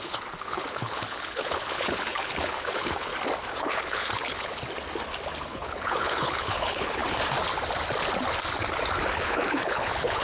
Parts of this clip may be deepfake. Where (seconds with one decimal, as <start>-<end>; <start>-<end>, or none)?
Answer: 0.0-3.1; 3.6-4.5; 5.5-7.0; 9.2-10.2